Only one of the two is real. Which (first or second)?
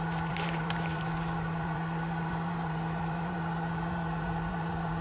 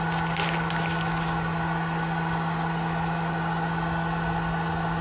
second